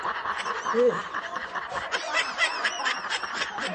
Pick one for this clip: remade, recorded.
remade